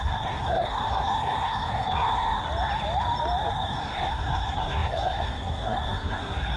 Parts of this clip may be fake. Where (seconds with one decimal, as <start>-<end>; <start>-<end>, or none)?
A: 0.0-2.4; 3.5-6.6